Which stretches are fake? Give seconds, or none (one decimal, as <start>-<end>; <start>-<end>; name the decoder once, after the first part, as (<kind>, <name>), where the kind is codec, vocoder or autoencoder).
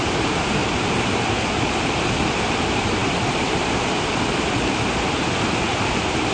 none